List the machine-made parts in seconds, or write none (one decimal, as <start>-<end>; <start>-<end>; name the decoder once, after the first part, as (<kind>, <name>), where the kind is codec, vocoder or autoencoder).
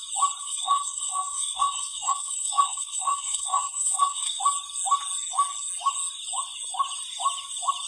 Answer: 0.4-4.4 (codec, SNAC)